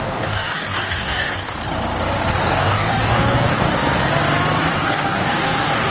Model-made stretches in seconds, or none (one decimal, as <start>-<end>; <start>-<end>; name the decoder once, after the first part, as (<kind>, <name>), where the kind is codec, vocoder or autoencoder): 0.0-1.6 (codec, DAC); 2.4-3.7; 4.7-5.9